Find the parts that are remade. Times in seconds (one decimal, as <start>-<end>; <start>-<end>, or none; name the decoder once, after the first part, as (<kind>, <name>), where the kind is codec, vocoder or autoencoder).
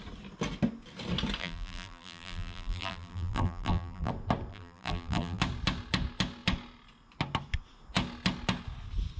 1.4-4.1 (vocoder, BigVGAN v2); 4.5-5.4